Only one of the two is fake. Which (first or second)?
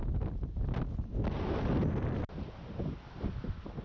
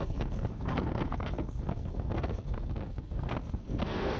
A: second